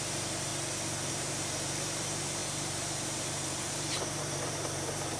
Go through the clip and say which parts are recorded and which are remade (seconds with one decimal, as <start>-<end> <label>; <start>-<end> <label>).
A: 0.0-0.5 remade; 0.5-1.1 recorded; 1.1-5.2 remade